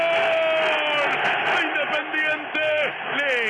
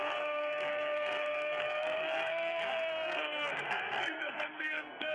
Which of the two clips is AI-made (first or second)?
second